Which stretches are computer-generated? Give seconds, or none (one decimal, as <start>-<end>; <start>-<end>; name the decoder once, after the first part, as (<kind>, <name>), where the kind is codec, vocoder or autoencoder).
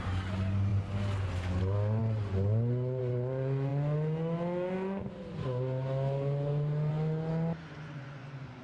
7.6-8.6 (vocoder, Vocos)